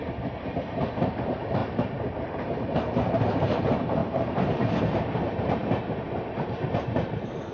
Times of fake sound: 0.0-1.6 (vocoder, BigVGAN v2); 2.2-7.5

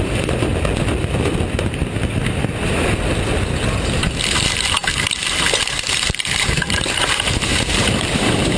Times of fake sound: 0.0-0.5 (vocoder, BigVGAN v2); 5.7-8.6

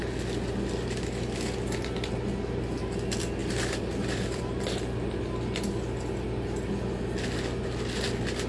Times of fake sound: 3.4-4.4 (vocoder, BigVGAN v2)

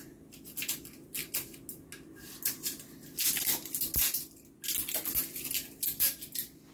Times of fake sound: none

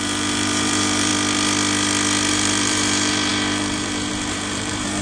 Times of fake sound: 0.0-1.1 (vocoder, BigVGAN v2); 2.3-5.0